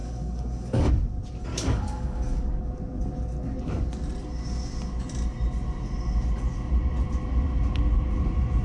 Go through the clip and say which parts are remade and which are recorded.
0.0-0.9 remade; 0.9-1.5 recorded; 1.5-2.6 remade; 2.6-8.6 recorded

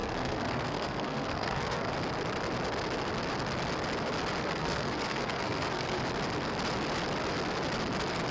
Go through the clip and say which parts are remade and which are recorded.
0.0-1.9 remade; 1.9-4.4 recorded; 4.4-6.0 remade; 6.0-8.3 recorded

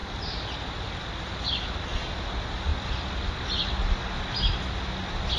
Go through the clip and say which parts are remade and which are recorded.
0.0-5.4 recorded

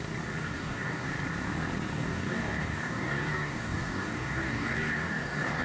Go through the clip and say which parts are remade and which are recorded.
0.0-0.4 recorded; 0.4-1.1 remade; 1.1-1.9 recorded; 1.9-5.6 remade

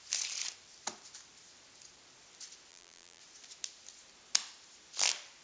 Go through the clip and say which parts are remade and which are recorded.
0.0-2.7 recorded; 2.7-3.2 remade; 3.2-5.4 recorded

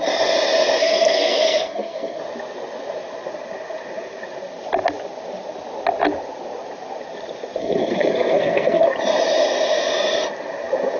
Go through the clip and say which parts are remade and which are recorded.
0.0-0.8 recorded; 0.8-2.2 remade; 2.2-7.6 recorded; 7.6-8.8 remade; 8.8-11.0 recorded